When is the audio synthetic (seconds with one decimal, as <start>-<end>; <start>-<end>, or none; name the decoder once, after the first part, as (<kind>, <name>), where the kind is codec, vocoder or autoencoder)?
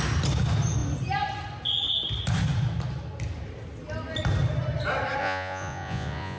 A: 5.2-6.4 (vocoder, Vocos)